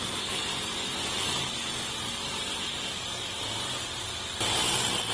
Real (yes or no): yes